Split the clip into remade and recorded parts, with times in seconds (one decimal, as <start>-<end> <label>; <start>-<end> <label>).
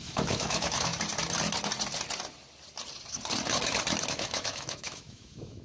0.0-0.9 remade; 0.9-4.1 recorded; 4.1-5.6 remade